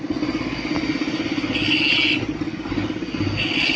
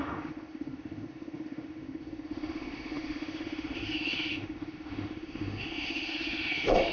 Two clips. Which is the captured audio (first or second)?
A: first